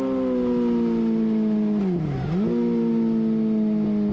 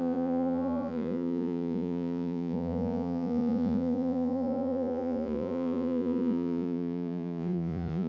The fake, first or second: second